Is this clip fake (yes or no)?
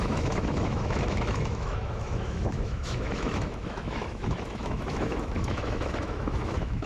yes